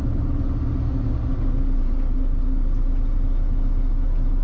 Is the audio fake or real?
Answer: real